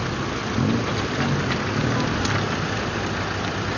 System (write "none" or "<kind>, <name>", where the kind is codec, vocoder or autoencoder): none